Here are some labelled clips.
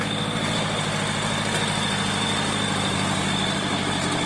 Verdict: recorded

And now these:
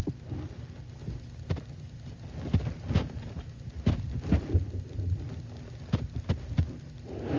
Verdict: recorded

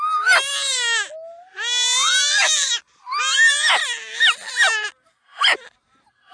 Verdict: recorded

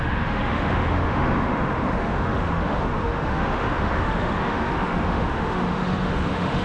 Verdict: remade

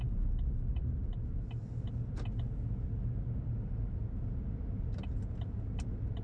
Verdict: recorded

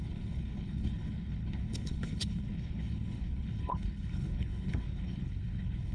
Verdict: remade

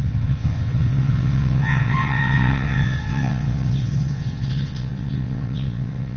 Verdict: remade